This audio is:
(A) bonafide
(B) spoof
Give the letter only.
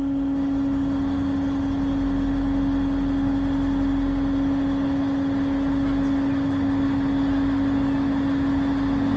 A